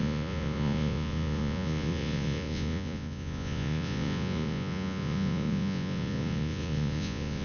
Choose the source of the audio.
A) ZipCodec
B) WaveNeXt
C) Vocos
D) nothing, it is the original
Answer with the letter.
C